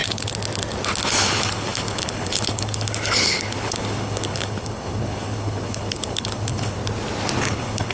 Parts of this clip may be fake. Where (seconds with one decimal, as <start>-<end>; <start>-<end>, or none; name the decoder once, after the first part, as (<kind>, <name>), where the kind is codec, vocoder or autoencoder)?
1.0-6.8 (codec, HILCodec); 7.4-7.9